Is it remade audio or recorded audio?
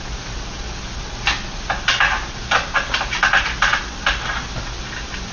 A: recorded